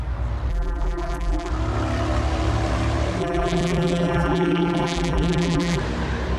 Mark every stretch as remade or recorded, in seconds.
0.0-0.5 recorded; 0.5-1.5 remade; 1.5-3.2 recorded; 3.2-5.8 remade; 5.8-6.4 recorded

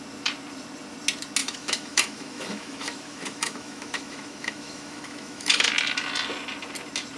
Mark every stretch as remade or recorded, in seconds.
0.0-1.4 recorded; 1.4-5.7 remade; 5.7-7.2 recorded

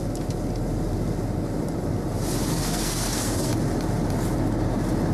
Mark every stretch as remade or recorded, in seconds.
0.0-2.5 recorded; 2.5-3.5 remade; 3.5-5.1 recorded

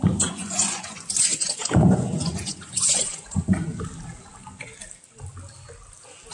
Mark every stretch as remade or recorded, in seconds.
0.0-3.6 remade; 3.6-6.3 recorded

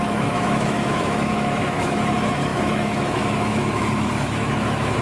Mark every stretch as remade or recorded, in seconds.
0.0-5.0 remade

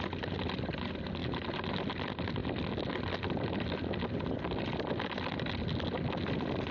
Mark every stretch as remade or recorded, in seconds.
0.0-6.7 recorded

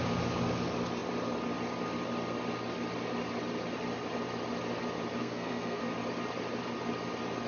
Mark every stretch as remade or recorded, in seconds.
0.0-5.2 recorded; 5.2-5.8 remade; 5.8-7.5 recorded

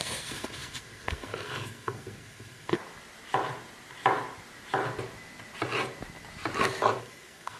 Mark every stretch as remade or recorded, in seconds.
0.0-2.8 remade; 2.8-7.0 recorded; 7.0-7.6 remade